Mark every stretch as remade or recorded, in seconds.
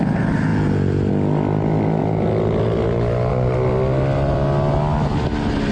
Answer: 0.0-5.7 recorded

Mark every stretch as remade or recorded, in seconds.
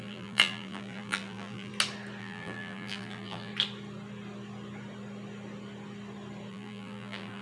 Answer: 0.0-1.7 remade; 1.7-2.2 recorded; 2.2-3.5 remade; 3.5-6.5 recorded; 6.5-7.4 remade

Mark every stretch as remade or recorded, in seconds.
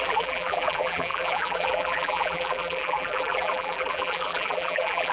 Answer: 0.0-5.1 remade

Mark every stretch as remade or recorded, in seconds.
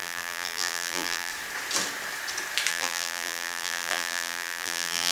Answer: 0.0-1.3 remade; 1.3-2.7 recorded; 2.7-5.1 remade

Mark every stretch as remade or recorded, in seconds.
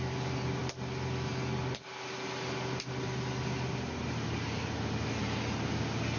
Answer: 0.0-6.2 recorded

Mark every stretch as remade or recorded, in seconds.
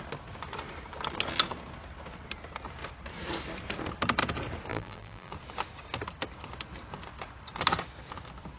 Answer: 0.0-4.7 recorded; 4.7-5.3 remade; 5.3-8.6 recorded